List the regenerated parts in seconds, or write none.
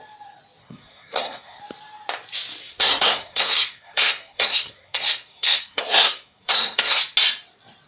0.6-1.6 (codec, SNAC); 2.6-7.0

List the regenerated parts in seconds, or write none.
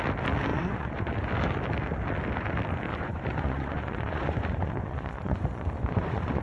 0.5-1.1 (vocoder, Vocos); 2.9-6.4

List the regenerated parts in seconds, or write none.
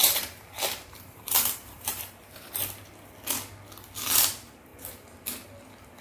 0.0-2.5 (vocoder, BigVGAN v2)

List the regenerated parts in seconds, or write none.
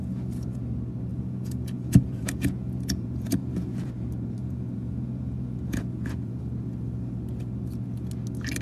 0.0-0.6 (vocoder, Vocos); 1.1-3.9; 4.4-6.4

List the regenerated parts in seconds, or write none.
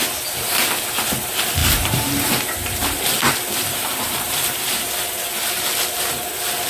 1.6-5.6 (vocoder, BigVGAN v2)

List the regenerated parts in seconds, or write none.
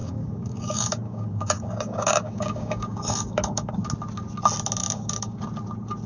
0.0-3.7 (codec, DAC); 4.8-5.4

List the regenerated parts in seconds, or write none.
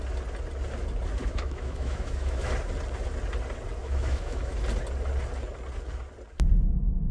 1.2-2.5 (autoencoder, DAC-VAE); 3.8-4.5